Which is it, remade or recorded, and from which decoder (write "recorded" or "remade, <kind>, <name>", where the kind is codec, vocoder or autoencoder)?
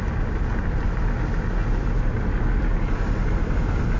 recorded